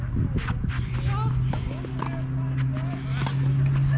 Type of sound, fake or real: real